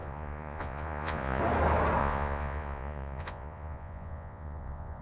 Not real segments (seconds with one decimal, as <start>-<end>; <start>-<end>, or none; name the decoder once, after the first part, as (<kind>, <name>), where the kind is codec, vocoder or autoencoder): 0.0-1.4 (vocoder, Vocos); 2.0-5.0